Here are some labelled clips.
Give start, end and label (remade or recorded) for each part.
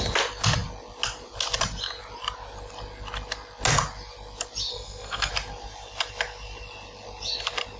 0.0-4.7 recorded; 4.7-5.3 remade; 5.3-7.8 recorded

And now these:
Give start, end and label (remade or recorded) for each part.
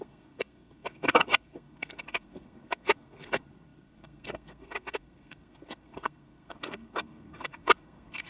0.0-8.3 remade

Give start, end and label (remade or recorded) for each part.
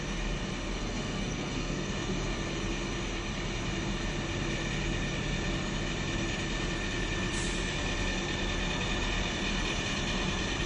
0.0-0.8 recorded; 0.8-1.9 remade; 1.9-10.7 recorded